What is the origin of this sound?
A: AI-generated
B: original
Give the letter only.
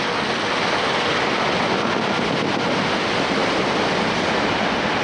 B